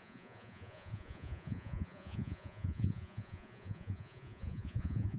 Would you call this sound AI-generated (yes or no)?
yes